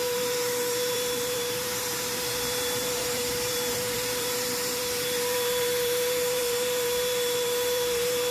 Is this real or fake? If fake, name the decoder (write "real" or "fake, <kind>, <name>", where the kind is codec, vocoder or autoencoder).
fake, vocoder, BigVGAN v2